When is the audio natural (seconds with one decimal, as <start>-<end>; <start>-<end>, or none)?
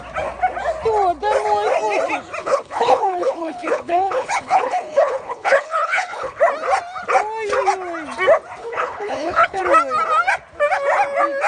0.0-2.4; 6.4-8.6; 9.6-11.5